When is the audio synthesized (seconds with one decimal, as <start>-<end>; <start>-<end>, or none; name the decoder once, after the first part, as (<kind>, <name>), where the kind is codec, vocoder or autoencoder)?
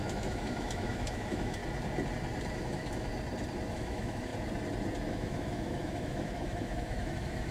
0.0-1.6 (autoencoder, DAC-VAE); 2.5-3.1; 3.7-4.3; 5.1-7.5